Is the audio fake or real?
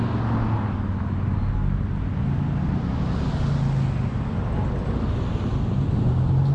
real